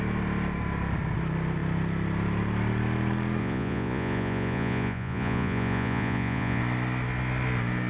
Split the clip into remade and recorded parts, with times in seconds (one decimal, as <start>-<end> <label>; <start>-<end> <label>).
0.0-3.4 recorded; 3.4-6.6 remade; 6.6-7.9 recorded